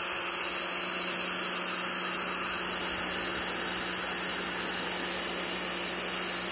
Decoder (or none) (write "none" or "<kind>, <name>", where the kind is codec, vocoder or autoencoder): none